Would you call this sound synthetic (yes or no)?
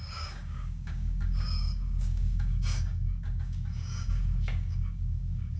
yes